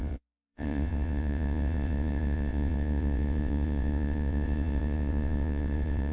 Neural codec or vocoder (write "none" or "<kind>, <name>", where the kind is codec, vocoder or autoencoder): vocoder, WaveNeXt